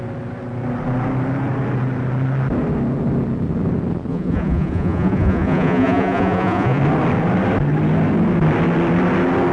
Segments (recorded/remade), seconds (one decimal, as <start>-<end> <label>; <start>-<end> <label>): 0.0-4.1 recorded; 4.1-6.8 remade; 6.8-9.5 recorded